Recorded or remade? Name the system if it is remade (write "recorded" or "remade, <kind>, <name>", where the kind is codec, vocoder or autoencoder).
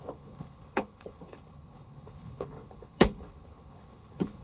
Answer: remade, codec, HILCodec